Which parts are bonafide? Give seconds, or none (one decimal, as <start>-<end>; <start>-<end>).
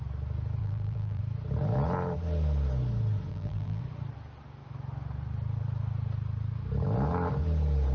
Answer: 0.0-0.6; 1.2-3.3; 3.8-7.9